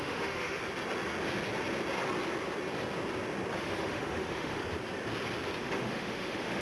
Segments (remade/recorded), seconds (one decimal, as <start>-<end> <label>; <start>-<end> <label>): 0.0-0.6 remade; 0.6-3.6 recorded; 3.6-4.6 remade; 4.6-5.6 recorded; 5.6-6.6 remade